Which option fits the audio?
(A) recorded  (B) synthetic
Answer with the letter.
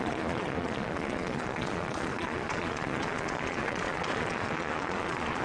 B